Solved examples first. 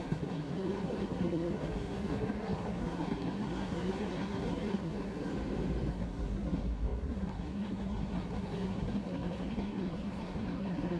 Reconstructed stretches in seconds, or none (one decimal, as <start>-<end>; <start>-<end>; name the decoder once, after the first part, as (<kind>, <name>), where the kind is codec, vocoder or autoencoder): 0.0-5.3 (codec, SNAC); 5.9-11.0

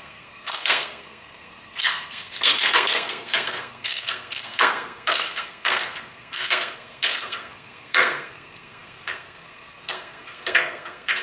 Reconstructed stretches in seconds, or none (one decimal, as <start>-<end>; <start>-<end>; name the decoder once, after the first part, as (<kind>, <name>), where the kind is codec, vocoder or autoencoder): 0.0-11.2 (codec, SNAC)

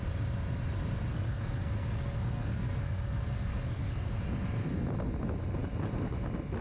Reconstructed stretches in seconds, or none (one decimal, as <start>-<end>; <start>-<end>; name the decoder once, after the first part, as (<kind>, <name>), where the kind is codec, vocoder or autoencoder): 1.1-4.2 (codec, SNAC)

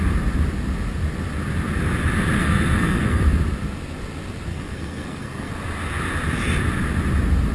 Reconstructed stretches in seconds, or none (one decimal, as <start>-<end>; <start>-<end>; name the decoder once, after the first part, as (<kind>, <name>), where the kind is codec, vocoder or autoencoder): 2.4-3.2 (codec, SNAC); 4.5-5.5

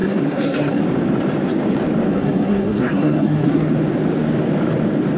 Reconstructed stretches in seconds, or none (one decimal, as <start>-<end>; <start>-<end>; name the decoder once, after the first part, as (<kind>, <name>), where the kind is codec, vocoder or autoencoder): 0.0-0.8 (codec, SNAC); 2.1-3.7

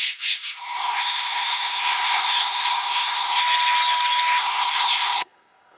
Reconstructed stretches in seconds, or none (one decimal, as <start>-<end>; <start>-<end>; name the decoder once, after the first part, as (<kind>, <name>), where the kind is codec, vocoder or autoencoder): 0.0-3.4 (codec, SNAC); 4.4-5.8

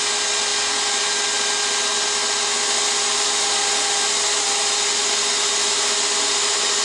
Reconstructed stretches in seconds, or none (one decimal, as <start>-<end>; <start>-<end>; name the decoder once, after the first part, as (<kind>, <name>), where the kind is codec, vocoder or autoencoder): none

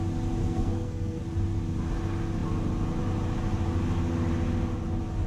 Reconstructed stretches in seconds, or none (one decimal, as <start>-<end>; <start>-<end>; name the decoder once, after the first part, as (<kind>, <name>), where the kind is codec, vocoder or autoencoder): 0.4-1.2 (codec, SNAC)